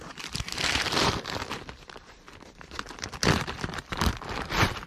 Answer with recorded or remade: remade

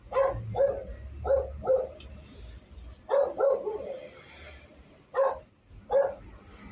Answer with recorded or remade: recorded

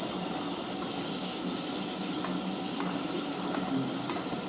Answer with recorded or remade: recorded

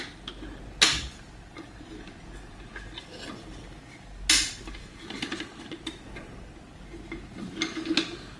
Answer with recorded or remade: recorded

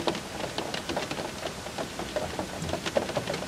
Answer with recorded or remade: recorded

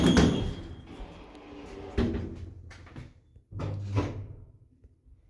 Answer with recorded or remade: recorded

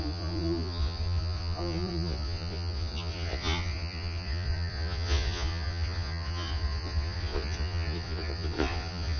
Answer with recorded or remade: remade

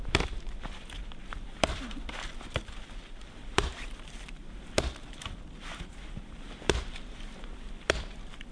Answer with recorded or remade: remade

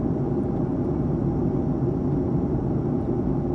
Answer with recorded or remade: recorded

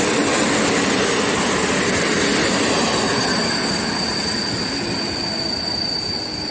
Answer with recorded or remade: recorded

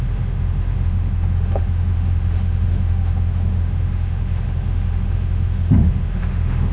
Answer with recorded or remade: remade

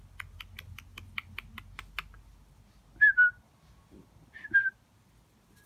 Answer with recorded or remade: recorded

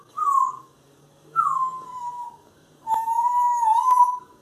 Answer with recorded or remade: remade